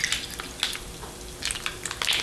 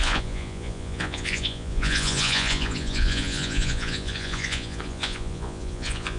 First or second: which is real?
first